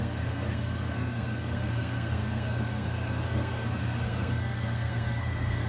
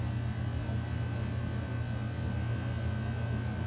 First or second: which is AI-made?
first